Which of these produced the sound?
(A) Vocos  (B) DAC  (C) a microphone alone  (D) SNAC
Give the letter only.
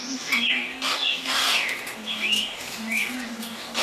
B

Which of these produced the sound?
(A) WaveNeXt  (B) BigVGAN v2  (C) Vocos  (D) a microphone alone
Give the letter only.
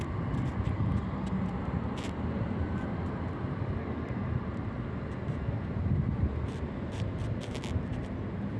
D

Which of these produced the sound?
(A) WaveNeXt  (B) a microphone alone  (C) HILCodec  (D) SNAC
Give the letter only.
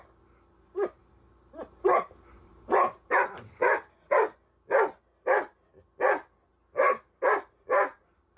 B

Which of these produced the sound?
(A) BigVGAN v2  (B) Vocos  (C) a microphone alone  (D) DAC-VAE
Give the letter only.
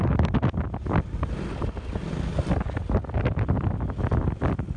C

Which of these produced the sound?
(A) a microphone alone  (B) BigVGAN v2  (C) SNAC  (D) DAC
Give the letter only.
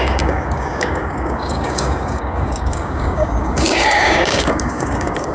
D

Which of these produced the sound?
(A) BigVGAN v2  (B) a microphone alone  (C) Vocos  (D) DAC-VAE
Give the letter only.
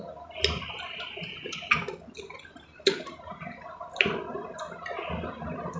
B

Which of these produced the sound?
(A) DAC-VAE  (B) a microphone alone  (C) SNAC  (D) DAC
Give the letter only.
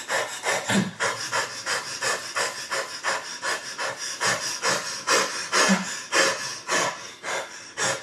B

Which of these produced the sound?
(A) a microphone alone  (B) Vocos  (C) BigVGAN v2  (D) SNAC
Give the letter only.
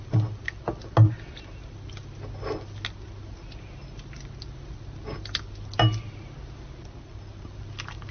A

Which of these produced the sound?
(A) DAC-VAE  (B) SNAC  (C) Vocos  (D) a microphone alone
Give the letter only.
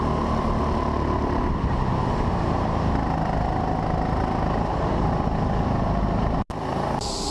D